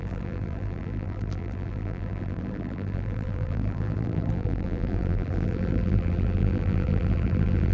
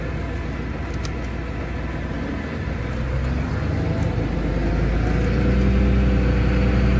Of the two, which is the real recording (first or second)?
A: second